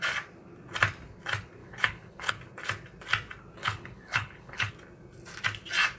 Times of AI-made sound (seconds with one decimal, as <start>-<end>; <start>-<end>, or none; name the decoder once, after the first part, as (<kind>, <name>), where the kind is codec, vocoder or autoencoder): 1.6-2.3 (codec, HILCodec); 3.6-4.7